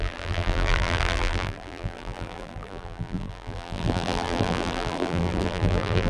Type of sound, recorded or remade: remade